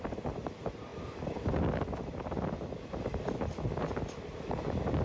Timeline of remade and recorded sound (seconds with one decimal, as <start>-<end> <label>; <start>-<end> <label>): 0.0-5.0 recorded